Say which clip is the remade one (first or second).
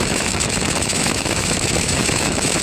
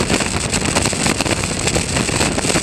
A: first